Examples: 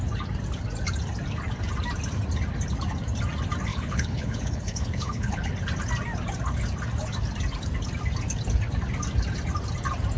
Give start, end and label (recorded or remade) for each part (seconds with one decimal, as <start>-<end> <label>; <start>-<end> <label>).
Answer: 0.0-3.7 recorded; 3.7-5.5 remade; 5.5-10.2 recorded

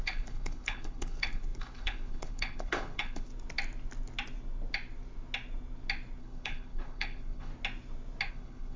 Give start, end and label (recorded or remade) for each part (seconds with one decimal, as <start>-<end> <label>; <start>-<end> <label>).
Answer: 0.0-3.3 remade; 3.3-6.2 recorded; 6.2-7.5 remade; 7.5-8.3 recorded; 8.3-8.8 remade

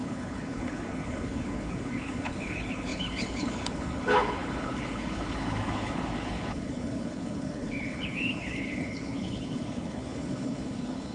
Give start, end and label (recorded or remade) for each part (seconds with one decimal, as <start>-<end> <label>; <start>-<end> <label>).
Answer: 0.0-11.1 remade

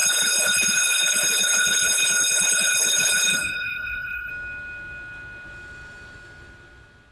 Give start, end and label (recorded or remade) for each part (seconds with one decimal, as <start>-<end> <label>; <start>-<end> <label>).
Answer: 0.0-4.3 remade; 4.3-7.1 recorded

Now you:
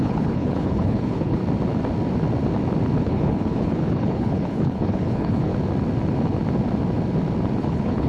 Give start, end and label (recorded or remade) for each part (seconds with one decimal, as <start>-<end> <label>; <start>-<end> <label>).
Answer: 0.0-1.4 remade; 1.4-3.0 recorded; 3.0-5.5 remade; 5.5-7.6 recorded; 7.6-8.1 remade